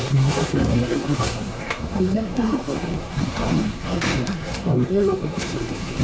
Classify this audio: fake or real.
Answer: fake